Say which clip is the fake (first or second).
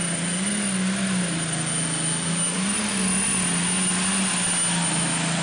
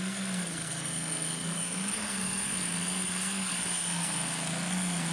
second